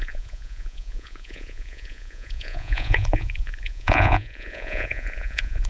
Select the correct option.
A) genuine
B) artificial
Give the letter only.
B